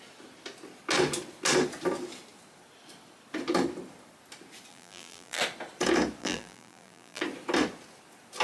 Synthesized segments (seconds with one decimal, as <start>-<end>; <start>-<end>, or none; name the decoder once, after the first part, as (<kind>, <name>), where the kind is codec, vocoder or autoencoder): 4.7-5.4 (vocoder, BigVGAN v2); 6.2-7.2